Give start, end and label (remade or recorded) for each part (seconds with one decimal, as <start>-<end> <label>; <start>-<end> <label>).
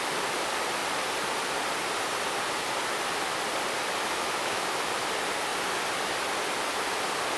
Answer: 0.0-4.0 recorded; 4.0-4.9 remade; 4.9-7.4 recorded